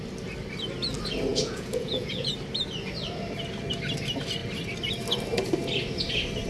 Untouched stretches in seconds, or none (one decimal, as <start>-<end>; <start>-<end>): 0.0-1.3; 2.3-6.5